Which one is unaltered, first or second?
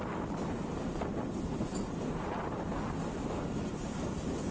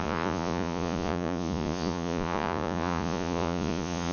first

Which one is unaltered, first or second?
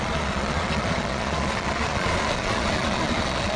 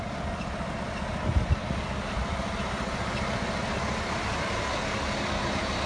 second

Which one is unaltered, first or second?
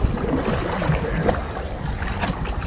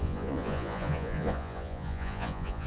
first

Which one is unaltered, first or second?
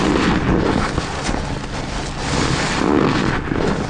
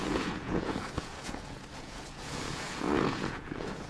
first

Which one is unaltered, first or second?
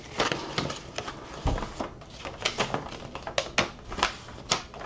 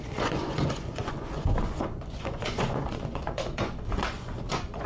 first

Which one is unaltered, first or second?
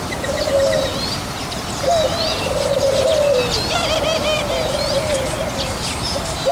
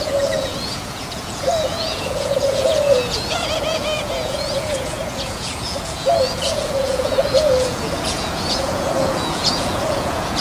first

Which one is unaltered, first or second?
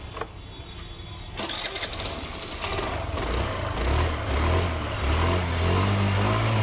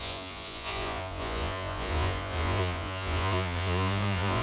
first